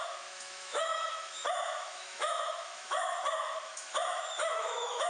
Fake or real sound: fake